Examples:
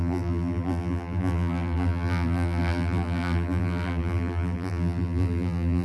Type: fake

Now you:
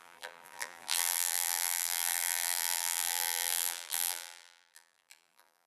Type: fake